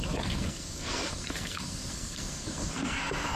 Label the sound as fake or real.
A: fake